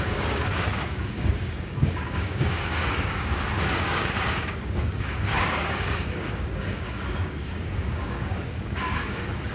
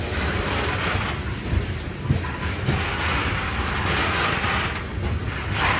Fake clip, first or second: first